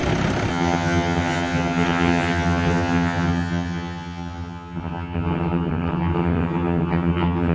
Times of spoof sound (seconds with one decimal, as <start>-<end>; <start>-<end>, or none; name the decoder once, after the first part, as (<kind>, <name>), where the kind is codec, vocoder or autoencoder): 0.5-7.5 (vocoder, HiFi-GAN)